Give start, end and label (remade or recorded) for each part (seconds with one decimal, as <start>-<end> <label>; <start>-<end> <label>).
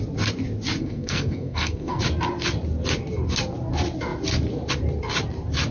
0.0-0.8 recorded; 0.8-2.0 remade; 2.0-5.7 recorded